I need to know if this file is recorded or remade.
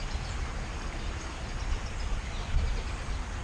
recorded